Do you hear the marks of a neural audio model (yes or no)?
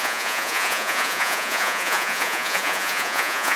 yes